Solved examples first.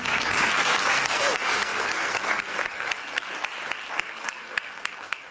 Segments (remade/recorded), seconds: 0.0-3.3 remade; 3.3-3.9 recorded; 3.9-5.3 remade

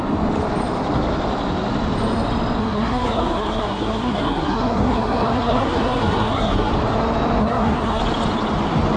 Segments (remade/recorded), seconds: 0.0-2.6 recorded; 2.6-6.7 remade; 6.7-7.4 recorded; 7.4-8.0 remade; 8.0-9.0 recorded

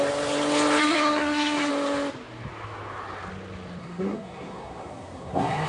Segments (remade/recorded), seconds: 0.0-0.8 recorded; 0.8-1.7 remade; 1.7-3.8 recorded; 3.8-5.7 remade

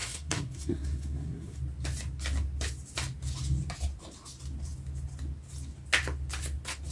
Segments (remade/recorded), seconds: 0.0-1.6 remade; 1.6-6.9 recorded

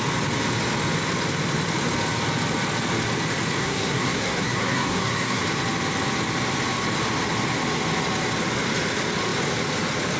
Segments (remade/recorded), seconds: 0.0-3.6 recorded; 3.6-5.4 remade; 5.4-10.2 recorded

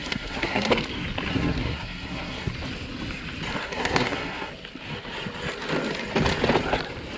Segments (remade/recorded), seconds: 0.0-0.8 remade; 0.8-1.3 recorded; 1.3-2.5 remade; 2.5-3.6 recorded; 3.6-4.5 remade; 4.5-7.2 recorded